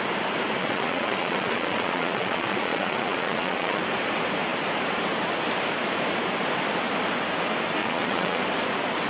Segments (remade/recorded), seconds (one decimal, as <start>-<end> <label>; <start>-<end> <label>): 0.0-0.6 recorded; 0.6-3.8 remade; 3.8-7.8 recorded; 7.8-8.4 remade; 8.4-9.1 recorded